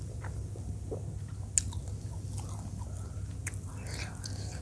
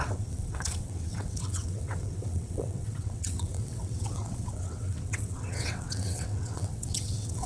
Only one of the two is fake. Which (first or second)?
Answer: second